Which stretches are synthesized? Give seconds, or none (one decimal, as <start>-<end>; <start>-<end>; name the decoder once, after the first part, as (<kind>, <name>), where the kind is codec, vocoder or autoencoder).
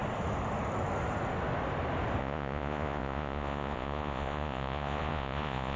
2.2-5.8 (vocoder, Vocos)